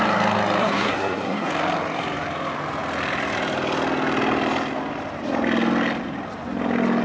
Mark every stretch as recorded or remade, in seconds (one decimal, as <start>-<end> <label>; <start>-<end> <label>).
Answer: 0.0-0.6 recorded; 0.6-1.5 remade; 1.5-7.0 recorded